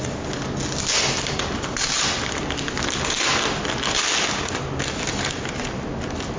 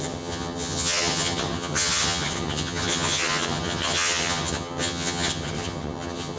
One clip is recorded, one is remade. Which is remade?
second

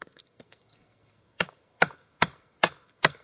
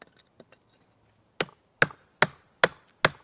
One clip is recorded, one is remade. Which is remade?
first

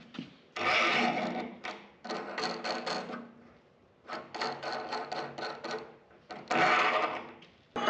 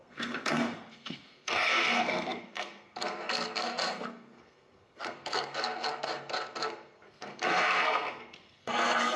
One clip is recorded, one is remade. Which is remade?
second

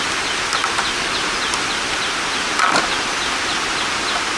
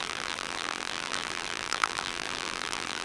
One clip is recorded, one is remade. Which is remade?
second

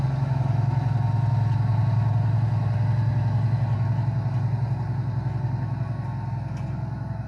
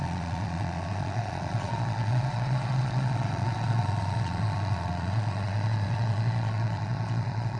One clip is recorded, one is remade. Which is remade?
second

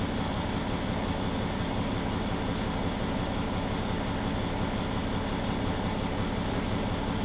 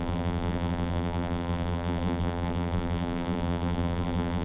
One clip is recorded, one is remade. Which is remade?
second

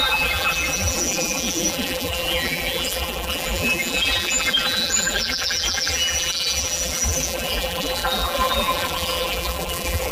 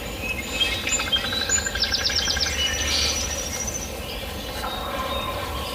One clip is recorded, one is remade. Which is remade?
first